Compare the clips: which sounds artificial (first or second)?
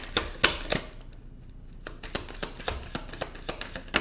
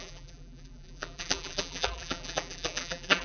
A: second